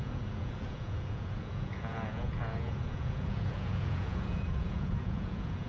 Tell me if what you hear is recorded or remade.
remade